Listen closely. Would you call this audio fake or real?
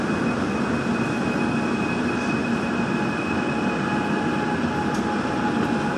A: real